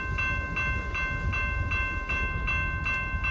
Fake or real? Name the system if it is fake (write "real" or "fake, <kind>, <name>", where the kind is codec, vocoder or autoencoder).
real